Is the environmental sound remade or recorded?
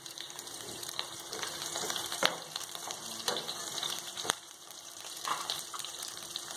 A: remade